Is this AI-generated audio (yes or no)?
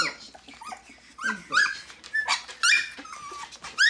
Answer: no